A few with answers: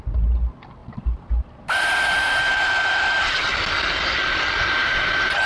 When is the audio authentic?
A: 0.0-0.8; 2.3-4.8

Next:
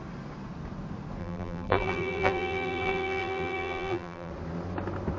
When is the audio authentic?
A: 0.0-1.2; 4.3-5.2

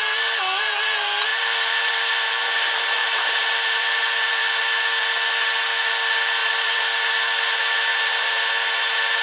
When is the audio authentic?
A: 0.0-1.3; 4.6-6.4; 7.1-7.9; 8.4-9.2

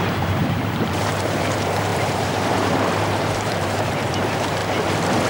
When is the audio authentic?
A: 4.6-5.3

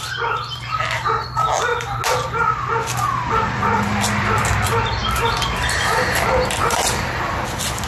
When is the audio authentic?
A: 1.7-3.3; 5.0-6.5

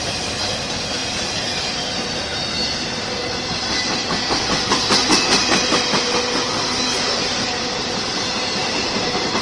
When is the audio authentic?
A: 0.0-7.3; 8.6-9.4

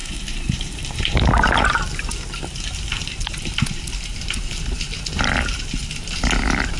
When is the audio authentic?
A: 1.7-3.0; 3.8-6.8

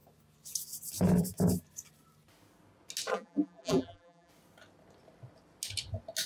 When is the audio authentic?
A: 0.0-3.1; 4.3-6.3